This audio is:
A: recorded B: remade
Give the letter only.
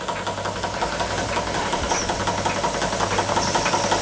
A